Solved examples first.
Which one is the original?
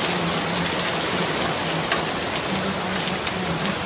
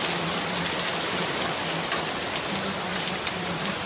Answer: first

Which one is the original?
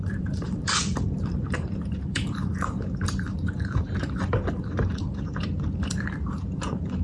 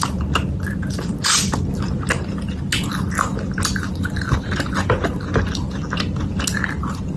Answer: second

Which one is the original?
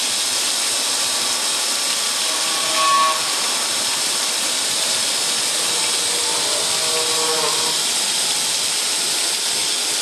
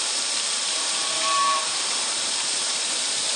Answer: first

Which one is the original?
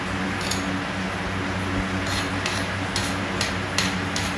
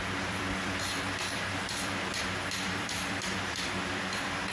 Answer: first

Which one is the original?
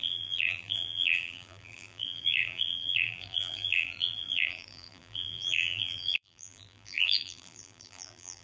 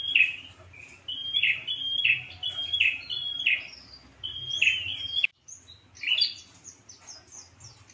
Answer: second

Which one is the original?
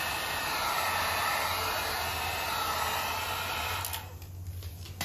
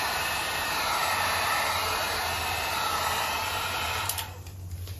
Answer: first